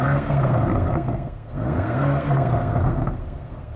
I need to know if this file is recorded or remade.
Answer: remade